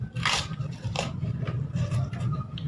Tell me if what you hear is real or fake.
real